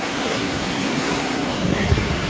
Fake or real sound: fake